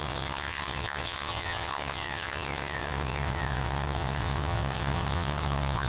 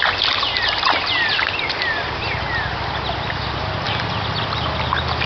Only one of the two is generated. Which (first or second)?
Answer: first